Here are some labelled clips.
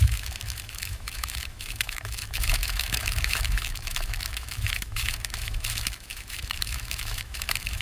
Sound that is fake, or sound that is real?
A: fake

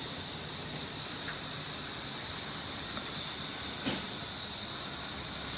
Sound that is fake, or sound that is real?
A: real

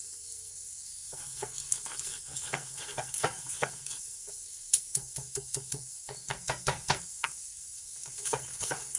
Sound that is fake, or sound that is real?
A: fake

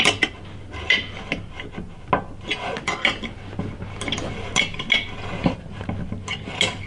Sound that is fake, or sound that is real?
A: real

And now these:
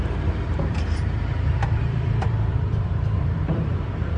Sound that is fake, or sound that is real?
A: fake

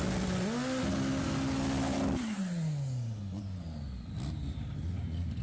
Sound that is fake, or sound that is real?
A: real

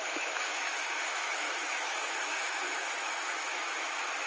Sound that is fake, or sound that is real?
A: fake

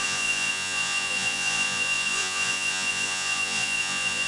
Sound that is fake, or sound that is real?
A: fake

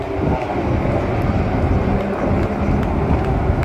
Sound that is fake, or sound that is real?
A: real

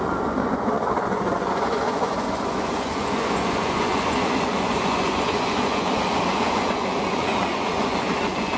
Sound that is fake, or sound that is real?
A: fake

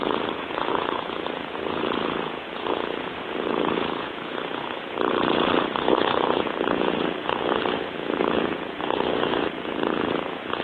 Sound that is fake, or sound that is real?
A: fake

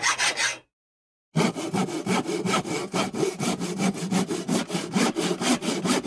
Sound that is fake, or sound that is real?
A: real